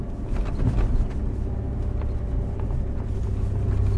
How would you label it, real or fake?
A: real